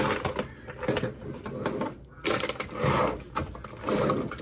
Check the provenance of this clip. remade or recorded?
recorded